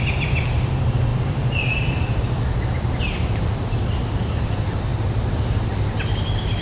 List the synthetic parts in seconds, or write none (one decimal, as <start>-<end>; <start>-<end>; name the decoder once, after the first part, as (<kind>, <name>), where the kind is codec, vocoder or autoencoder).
1.1-2.4 (vocoder, BigVGAN v2)